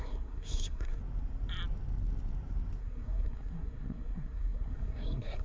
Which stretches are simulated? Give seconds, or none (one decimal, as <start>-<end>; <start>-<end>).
0.0-1.0; 2.8-5.4